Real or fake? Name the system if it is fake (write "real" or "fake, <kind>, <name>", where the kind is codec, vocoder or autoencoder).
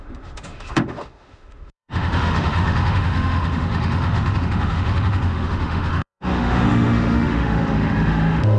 fake, autoencoder, DAC-VAE